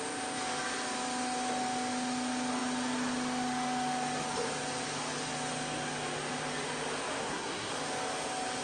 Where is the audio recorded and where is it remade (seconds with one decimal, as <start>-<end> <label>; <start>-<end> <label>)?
0.0-7.2 recorded; 7.2-7.7 remade; 7.7-8.6 recorded